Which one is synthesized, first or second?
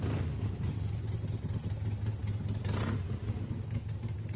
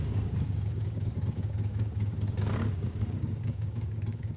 second